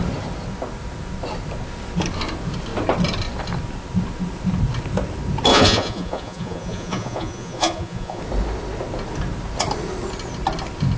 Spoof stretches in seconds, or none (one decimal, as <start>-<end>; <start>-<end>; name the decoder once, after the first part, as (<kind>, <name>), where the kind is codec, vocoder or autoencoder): 5.5-8.2 (vocoder, Vocos)